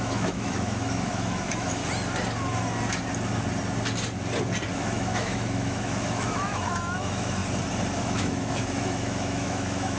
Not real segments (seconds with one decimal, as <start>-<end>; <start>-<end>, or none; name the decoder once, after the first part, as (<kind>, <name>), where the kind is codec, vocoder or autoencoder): 0.0-1.8 (autoencoder, DAC-VAE); 4.7-7.4; 8.0-10.0